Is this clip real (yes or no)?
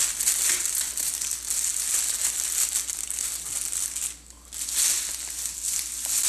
yes